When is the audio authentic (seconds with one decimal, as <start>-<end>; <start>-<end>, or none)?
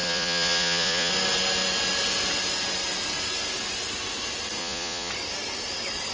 1.1-4.6; 5.1-6.1